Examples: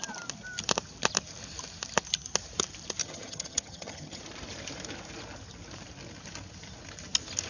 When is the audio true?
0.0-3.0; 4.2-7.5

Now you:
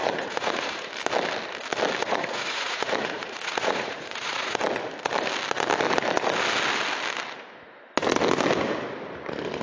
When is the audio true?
0.9-2.0; 4.6-9.6

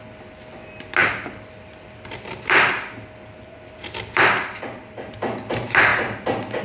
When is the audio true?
0.0-1.0; 5.0-6.6

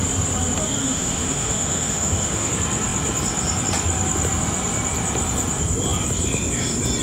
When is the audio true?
0.0-0.8; 2.5-7.0

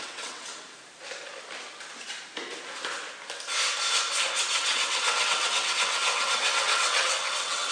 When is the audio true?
0.5-4.4

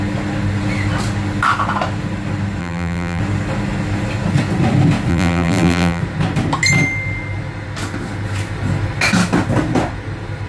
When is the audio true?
0.0-2.6; 3.2-5.1; 6.0-10.5